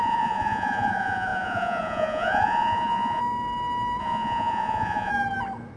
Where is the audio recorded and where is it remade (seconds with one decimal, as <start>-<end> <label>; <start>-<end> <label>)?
0.0-3.2 remade; 3.2-4.0 recorded; 4.0-5.1 remade; 5.1-5.8 recorded